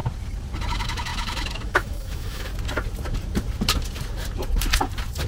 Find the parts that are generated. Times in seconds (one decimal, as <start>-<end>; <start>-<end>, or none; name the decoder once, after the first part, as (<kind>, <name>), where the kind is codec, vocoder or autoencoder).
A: 0.7-2.5 (autoencoder, DAC-VAE)

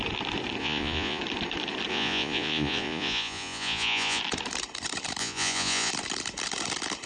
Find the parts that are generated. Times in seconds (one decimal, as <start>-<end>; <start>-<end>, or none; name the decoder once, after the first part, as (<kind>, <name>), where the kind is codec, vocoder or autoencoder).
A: 0.6-1.2 (vocoder, Vocos); 1.9-4.2; 5.2-5.9